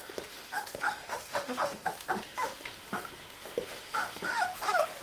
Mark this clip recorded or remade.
remade